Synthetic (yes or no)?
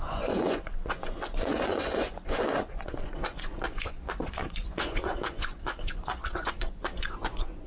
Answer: yes